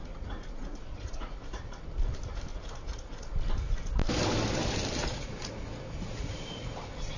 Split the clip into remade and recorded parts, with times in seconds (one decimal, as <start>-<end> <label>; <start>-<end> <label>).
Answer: 0.0-1.8 remade; 1.8-2.5 recorded; 2.5-3.2 remade; 3.2-5.0 recorded; 5.0-6.8 remade; 6.8-7.2 recorded